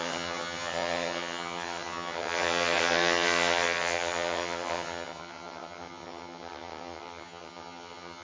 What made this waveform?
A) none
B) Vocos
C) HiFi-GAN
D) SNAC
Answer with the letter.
C